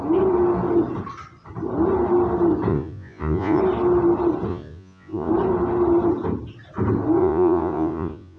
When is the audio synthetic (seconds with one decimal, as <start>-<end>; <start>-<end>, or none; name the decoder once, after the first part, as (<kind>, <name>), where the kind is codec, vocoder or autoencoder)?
2.7-3.6 (vocoder, Vocos); 4.5-5.3; 7.2-8.4